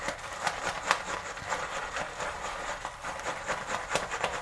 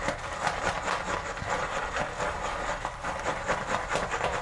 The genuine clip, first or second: second